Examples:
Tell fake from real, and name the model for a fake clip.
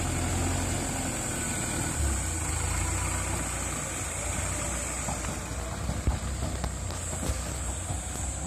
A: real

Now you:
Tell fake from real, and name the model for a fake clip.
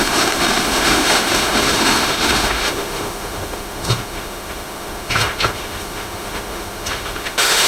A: fake, autoencoder, DAC-VAE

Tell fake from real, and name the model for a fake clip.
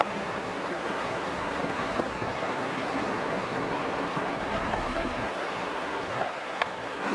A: fake, codec, SNAC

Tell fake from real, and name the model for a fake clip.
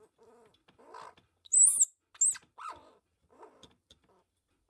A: real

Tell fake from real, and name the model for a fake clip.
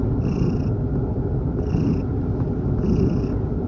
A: real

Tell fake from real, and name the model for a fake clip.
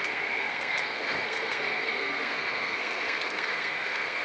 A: fake, codec, SNAC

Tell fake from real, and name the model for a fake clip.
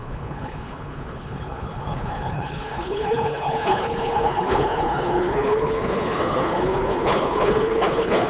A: fake, codec, HILCodec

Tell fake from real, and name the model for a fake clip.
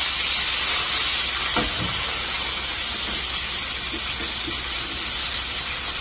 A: real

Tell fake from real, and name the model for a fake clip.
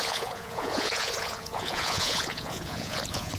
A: fake, vocoder, Vocos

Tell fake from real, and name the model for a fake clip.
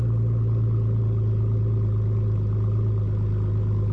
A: real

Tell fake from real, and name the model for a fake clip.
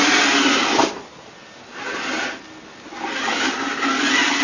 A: real